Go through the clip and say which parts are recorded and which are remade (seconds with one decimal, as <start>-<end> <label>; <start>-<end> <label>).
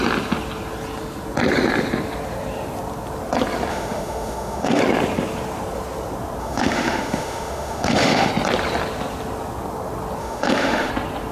0.0-3.7 recorded; 3.7-4.8 remade; 4.8-6.4 recorded; 6.4-8.3 remade; 8.3-10.2 recorded; 10.2-10.9 remade; 10.9-11.3 recorded